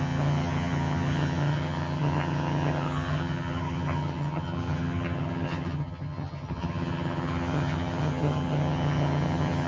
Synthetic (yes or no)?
yes